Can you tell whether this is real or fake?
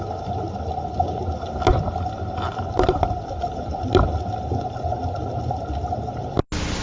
real